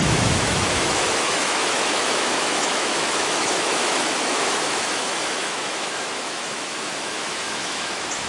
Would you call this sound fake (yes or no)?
yes